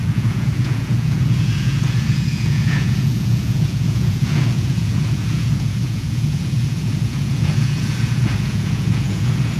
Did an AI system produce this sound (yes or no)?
yes